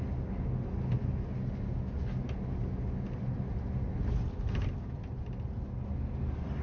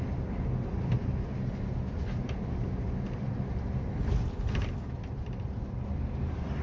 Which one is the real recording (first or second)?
first